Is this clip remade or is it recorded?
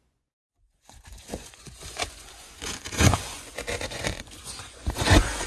remade